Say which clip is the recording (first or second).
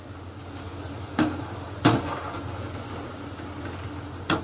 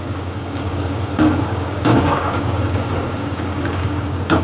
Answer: first